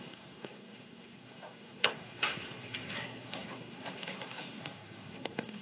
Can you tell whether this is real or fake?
fake